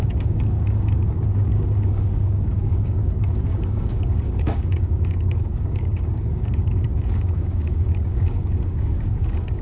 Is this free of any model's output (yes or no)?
no